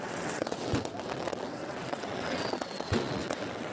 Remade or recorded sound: remade